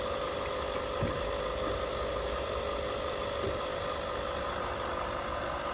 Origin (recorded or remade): recorded